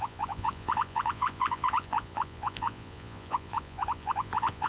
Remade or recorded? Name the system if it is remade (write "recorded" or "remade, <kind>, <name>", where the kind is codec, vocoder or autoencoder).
remade, vocoder, Vocos